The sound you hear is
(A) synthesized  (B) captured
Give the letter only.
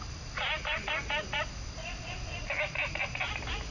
B